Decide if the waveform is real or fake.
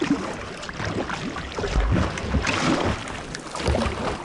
real